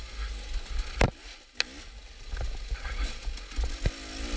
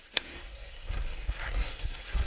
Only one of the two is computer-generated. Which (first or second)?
second